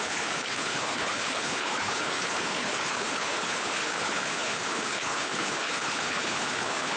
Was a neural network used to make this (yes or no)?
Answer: yes